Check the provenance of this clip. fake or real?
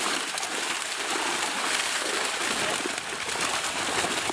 real